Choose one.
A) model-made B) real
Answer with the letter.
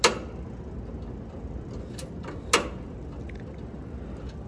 B